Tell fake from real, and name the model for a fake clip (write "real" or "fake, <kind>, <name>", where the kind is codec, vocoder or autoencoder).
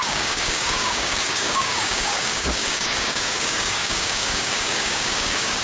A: fake, codec, DAC